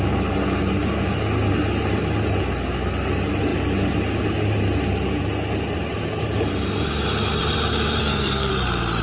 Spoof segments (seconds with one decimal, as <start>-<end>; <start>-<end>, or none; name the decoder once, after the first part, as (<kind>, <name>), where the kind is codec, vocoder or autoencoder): 8.0-8.5 (codec, SNAC)